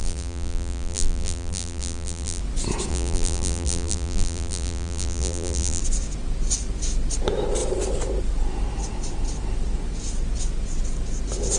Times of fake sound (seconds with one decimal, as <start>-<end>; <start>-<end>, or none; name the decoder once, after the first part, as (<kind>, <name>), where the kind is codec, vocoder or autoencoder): 0.0-2.4 (vocoder, BigVGAN v2); 2.9-5.8